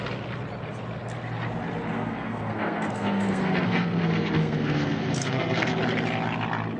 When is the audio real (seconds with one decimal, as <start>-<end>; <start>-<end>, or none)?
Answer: 0.0-1.9; 5.8-6.8